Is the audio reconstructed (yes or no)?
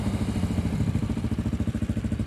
no